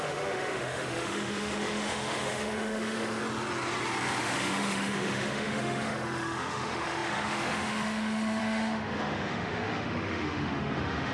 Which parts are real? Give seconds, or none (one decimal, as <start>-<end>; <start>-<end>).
3.2-4.2

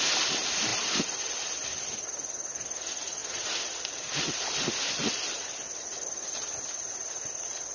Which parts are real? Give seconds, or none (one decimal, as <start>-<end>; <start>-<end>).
0.0-7.7